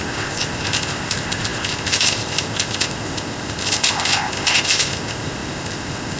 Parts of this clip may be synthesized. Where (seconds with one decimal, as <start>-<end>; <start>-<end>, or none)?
0.0-6.2